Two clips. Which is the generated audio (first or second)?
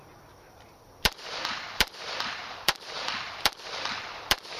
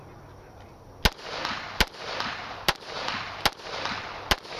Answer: first